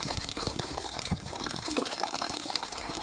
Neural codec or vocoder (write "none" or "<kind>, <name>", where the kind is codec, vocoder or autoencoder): codec, SNAC